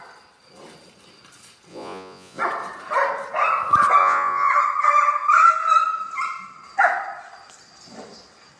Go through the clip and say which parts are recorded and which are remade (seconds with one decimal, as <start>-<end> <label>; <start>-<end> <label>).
0.0-1.7 recorded; 1.7-2.4 remade; 2.4-4.0 recorded; 4.0-4.5 remade; 4.5-8.6 recorded